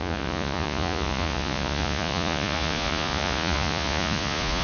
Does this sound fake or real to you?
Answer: fake